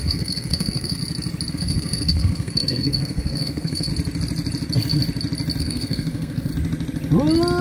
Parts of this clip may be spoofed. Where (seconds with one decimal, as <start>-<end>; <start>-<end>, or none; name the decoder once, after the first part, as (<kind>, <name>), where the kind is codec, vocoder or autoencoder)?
0.0-1.0 (codec, SNAC); 1.5-3.9; 5.6-6.5